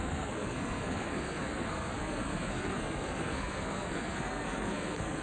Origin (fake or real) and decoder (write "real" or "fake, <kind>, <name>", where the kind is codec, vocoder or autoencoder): fake, codec, SNAC